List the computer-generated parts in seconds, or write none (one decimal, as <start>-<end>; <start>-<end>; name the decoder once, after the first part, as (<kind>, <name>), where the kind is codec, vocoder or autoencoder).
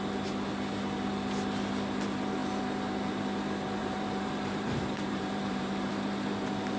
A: 3.8-5.9 (vocoder, BigVGAN v2)